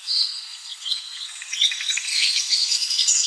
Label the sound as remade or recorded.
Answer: remade